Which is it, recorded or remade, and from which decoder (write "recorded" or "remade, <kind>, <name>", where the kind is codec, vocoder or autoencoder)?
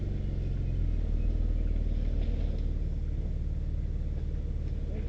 recorded